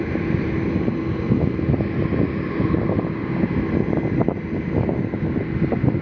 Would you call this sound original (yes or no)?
yes